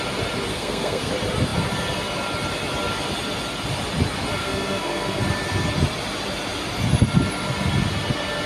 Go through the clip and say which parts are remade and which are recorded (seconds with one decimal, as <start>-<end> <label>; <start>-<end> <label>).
0.0-0.5 recorded; 0.5-1.1 remade; 1.1-4.4 recorded; 4.4-5.2 remade; 5.2-8.5 recorded